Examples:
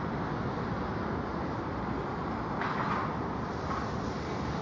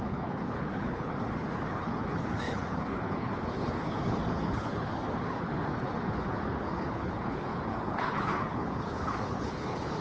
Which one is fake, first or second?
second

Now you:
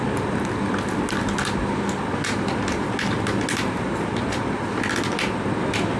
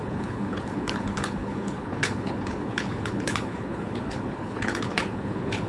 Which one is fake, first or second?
second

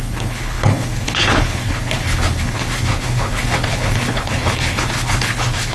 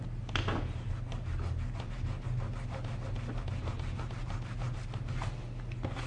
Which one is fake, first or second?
first